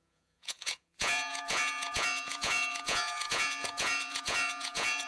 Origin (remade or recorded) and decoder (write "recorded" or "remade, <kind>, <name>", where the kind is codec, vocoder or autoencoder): remade, vocoder, Vocos